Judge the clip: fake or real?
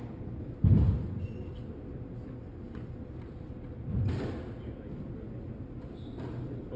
real